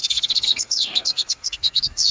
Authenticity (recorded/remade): remade